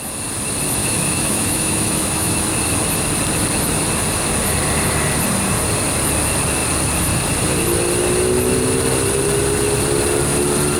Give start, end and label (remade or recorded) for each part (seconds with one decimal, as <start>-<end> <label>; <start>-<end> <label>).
0.0-0.8 recorded; 0.8-2.5 remade; 2.5-10.8 recorded